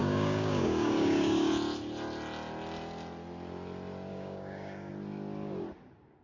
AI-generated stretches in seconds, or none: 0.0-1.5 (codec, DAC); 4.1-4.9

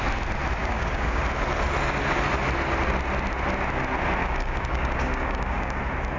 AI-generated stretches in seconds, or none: 0.6-1.2 (codec, DAC); 4.2-5.8

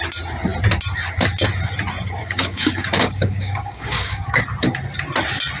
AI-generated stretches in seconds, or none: 2.2-4.4 (codec, DAC)

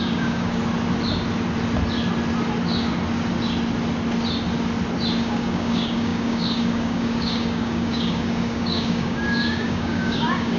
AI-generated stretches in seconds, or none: 0.0-0.6 (codec, DAC); 5.2-10.6

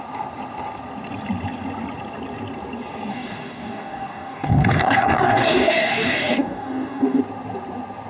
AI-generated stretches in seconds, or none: 3.1-7.2 (codec, DAC)